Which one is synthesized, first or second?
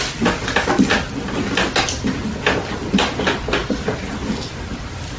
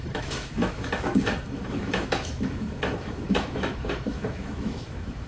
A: second